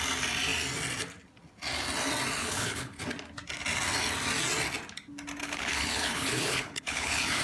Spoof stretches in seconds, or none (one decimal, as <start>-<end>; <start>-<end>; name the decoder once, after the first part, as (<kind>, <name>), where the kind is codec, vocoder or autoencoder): 2.4-3.0 (codec, HILCodec); 5.4-7.4